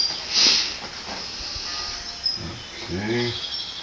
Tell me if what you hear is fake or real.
real